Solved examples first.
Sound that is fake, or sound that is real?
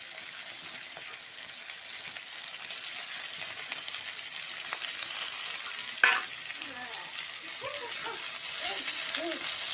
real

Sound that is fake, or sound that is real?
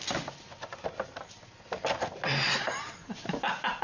real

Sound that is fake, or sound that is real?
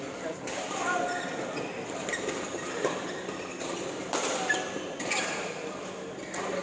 real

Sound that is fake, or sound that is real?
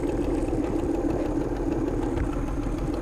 fake